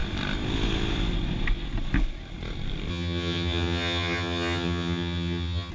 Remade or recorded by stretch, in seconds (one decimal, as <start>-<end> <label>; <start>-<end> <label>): 0.0-2.9 recorded; 2.9-5.7 remade